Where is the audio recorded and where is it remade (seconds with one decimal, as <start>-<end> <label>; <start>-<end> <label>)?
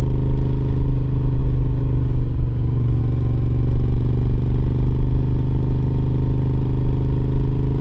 0.0-1.4 recorded; 1.4-3.0 remade; 3.0-7.8 recorded